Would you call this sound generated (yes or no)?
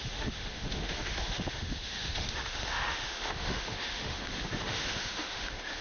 yes